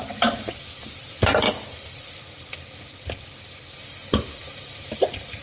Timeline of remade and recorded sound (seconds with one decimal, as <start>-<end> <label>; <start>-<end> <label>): 0.0-5.4 recorded